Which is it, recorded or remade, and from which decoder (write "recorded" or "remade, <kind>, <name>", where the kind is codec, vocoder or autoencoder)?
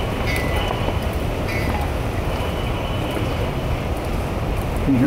remade, vocoder, BigVGAN v2